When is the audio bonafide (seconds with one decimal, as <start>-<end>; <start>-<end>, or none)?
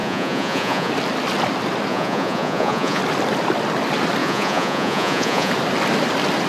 0.9-1.9; 3.0-4.2; 5.5-6.5